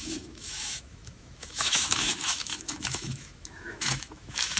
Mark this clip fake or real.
fake